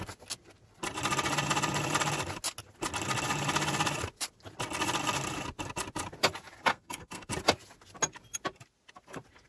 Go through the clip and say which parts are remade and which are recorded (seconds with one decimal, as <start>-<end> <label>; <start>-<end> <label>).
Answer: 0.0-6.7 recorded; 6.7-7.3 remade; 7.3-9.5 recorded